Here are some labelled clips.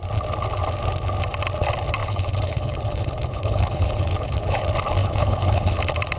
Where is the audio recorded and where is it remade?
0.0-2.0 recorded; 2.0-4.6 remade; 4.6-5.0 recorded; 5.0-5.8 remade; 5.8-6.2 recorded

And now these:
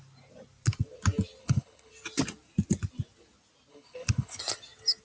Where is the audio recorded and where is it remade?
0.0-1.4 recorded; 1.4-1.9 remade; 1.9-3.7 recorded; 3.7-4.4 remade; 4.4-5.0 recorded

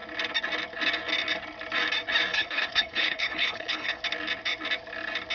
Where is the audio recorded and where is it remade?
0.0-2.3 recorded; 2.3-4.0 remade; 4.0-5.3 recorded

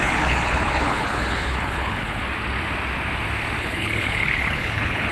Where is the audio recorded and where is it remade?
0.0-2.2 remade; 2.2-3.6 recorded; 3.6-5.1 remade